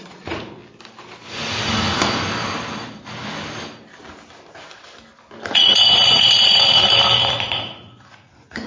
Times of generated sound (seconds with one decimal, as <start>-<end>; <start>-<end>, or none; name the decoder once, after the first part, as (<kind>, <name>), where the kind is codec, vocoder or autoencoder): 0.0-0.6 (vocoder, Vocos); 5.5-6.8; 7.3-8.7